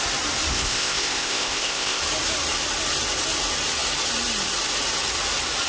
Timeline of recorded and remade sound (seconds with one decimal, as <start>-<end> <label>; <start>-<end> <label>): 0.0-0.5 recorded; 0.5-2.0 remade; 2.0-5.7 recorded